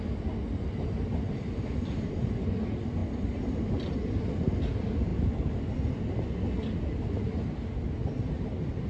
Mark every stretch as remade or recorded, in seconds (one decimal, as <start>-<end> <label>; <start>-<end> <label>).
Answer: 0.0-8.9 recorded